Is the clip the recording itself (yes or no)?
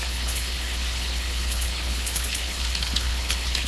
no